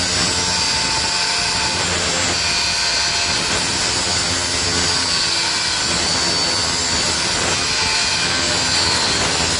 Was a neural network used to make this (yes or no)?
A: no